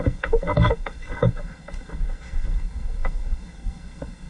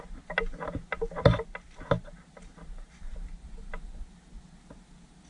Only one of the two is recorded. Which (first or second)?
second